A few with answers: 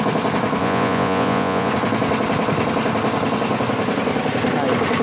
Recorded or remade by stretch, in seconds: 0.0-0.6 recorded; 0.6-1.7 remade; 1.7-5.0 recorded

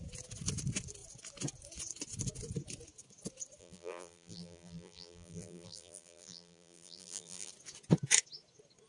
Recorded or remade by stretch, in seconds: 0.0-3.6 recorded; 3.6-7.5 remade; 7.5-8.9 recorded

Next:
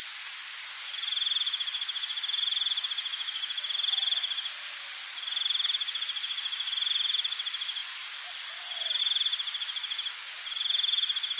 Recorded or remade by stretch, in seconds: 0.0-11.4 recorded